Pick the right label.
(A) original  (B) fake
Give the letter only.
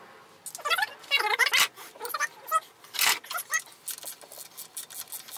A